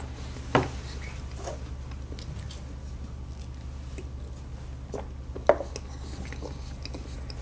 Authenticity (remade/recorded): recorded